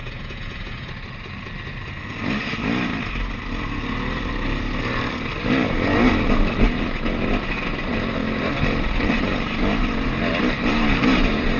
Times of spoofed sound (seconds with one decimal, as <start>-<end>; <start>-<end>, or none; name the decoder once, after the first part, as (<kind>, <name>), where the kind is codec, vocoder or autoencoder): 0.0-0.9 (vocoder, Vocos)

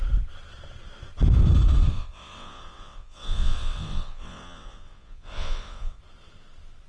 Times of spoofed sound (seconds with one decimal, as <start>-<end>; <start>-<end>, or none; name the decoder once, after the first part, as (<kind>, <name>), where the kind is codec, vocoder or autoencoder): 1.9-6.0 (vocoder, WaveNeXt)

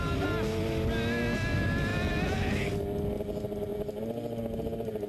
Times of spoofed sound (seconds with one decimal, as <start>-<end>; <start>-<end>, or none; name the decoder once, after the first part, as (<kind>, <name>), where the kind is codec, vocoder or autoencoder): none

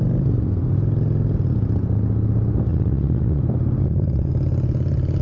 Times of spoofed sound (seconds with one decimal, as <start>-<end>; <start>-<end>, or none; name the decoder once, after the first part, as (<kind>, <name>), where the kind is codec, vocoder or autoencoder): 2.7-3.4 (vocoder, Vocos); 3.8-4.3

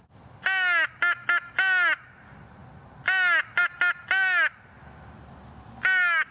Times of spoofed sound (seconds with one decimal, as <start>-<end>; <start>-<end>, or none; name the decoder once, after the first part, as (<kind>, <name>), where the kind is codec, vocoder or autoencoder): none

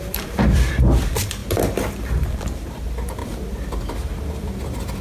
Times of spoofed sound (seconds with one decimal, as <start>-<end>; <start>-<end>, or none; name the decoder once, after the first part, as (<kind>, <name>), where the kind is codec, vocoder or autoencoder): 0.0-1.4 (vocoder, BigVGAN v2); 2.0-3.2